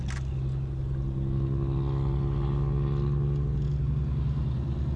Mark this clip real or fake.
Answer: real